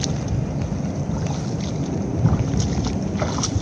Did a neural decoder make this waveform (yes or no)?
no